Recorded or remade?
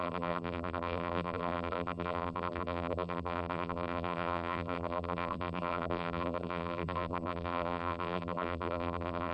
remade